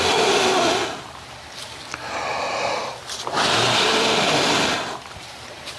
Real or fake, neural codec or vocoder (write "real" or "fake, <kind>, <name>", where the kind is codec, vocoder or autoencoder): real